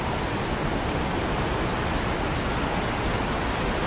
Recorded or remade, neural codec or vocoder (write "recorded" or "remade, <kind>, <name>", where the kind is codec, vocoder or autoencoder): recorded